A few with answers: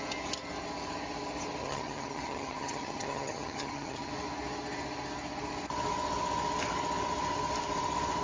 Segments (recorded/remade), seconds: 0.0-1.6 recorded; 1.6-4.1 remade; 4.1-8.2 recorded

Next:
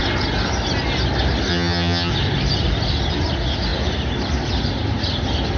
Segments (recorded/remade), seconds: 0.0-1.5 recorded; 1.5-2.1 remade; 2.1-5.6 recorded

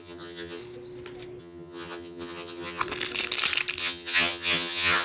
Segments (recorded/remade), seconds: 0.0-0.6 remade; 0.6-1.4 recorded; 1.4-2.8 remade; 2.8-3.8 recorded; 3.8-5.0 remade